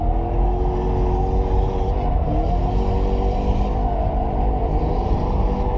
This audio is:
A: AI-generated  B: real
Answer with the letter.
B